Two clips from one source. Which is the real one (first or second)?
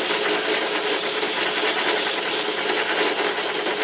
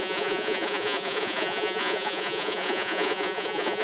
first